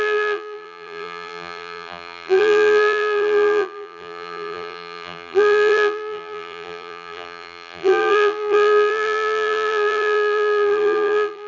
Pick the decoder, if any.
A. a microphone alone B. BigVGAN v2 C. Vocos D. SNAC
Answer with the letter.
B